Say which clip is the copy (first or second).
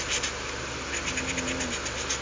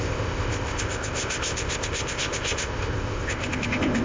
second